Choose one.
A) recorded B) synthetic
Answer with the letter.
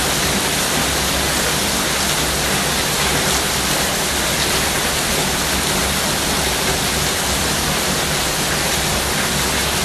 A